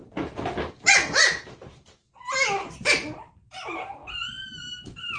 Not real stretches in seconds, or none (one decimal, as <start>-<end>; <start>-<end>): 0.0-4.0